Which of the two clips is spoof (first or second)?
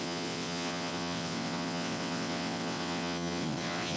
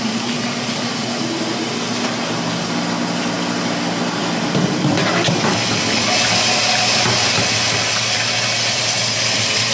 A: first